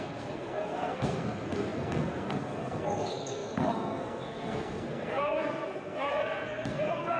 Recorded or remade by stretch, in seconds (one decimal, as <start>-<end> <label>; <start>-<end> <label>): 0.0-7.2 remade